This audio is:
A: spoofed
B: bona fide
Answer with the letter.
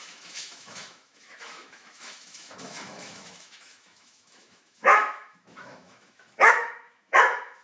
A